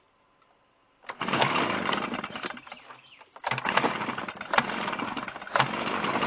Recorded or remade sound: recorded